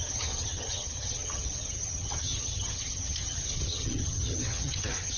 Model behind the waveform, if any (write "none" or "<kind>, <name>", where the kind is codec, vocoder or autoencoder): vocoder, HiFi-GAN